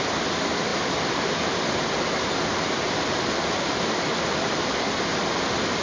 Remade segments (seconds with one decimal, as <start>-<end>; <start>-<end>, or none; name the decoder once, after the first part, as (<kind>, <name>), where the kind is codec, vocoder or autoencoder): none